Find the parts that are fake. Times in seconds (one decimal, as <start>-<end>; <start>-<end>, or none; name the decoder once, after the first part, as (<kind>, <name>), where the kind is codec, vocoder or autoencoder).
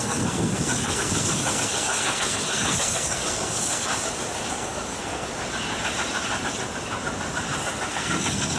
0.0-3.9 (codec, SNAC); 4.5-5.3; 7.9-8.6